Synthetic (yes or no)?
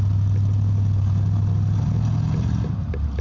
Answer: no